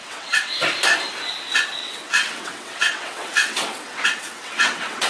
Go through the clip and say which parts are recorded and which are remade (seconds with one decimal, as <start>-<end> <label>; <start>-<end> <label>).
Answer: 0.0-0.5 remade; 0.5-1.8 recorded; 1.8-5.1 remade